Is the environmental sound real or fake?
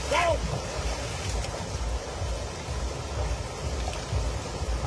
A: real